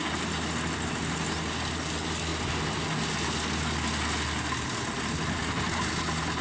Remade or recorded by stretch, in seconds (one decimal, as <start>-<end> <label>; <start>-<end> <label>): 0.0-6.4 recorded